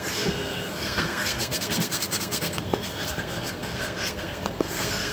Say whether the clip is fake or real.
fake